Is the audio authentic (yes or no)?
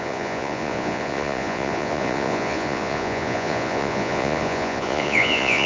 no